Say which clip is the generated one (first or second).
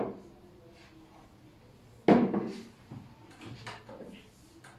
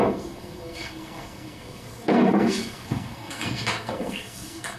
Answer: second